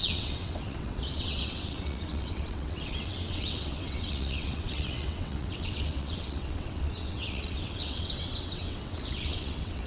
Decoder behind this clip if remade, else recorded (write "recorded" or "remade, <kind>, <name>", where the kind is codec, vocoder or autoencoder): remade, vocoder, WaveNeXt